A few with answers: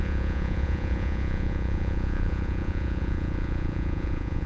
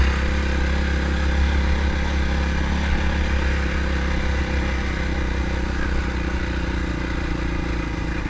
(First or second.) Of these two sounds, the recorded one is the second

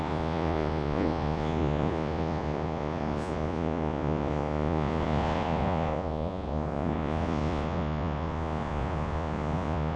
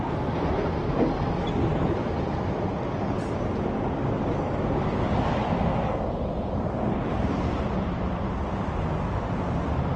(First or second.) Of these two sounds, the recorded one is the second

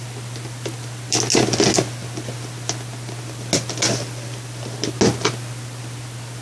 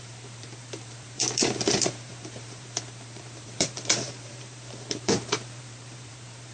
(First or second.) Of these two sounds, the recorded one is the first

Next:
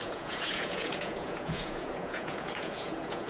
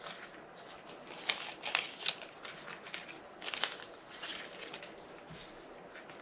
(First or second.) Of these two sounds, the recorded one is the second